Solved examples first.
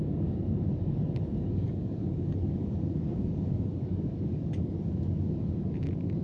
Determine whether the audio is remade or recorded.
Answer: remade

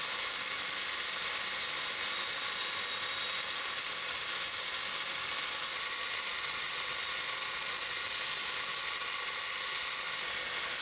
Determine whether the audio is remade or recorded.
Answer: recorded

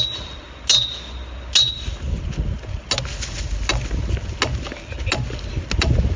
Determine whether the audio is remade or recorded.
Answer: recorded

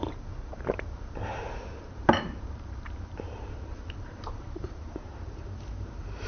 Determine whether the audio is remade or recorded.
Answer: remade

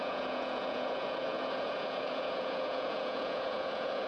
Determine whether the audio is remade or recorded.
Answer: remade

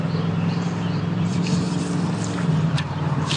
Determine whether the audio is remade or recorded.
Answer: remade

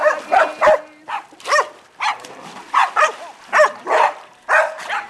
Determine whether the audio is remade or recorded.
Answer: remade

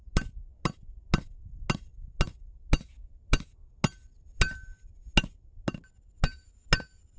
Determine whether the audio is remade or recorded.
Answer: recorded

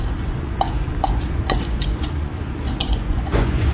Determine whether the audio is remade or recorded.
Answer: remade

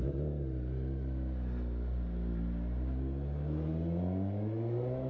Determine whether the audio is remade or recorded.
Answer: recorded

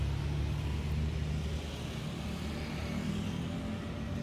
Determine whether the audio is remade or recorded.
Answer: recorded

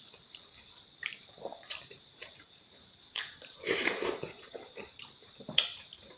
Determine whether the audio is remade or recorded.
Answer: remade